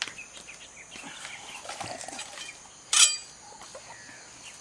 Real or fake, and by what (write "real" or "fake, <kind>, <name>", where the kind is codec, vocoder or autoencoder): real